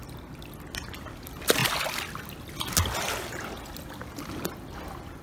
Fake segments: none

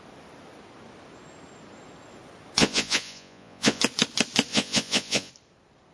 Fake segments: 2.6-3.8 (vocoder, Vocos); 4.5-5.3

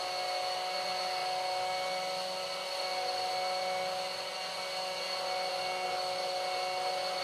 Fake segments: none